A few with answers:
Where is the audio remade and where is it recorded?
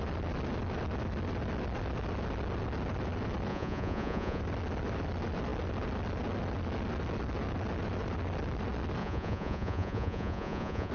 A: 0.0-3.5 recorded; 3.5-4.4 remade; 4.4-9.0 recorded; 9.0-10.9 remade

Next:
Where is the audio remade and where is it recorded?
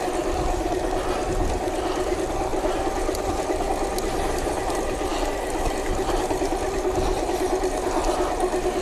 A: 0.0-8.8 recorded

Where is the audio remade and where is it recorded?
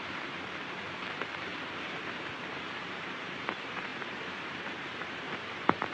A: 0.0-5.9 remade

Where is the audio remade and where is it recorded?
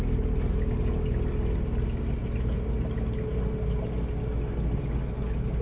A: 0.0-5.6 recorded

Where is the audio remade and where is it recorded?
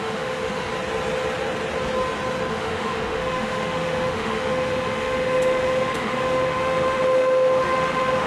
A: 0.0-0.7 remade; 0.7-2.5 recorded; 2.5-8.3 remade